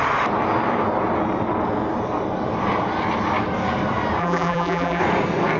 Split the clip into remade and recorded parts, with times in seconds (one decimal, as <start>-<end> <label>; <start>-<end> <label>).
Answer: 0.0-4.2 recorded; 4.2-5.0 remade; 5.0-5.6 recorded